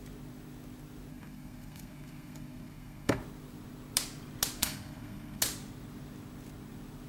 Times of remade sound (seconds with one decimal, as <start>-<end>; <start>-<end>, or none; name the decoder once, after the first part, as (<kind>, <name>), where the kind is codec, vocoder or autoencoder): 1.1-3.2 (codec, SNAC); 4.6-5.4